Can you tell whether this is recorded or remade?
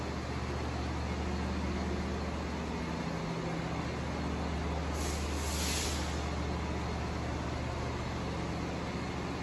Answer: recorded